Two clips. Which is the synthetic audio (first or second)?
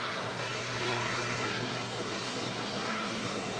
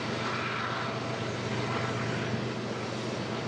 first